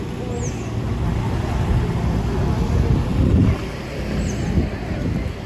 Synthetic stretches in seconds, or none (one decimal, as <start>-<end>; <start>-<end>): 3.1-4.3